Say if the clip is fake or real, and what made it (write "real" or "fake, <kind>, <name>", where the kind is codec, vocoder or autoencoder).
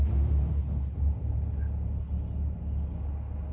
real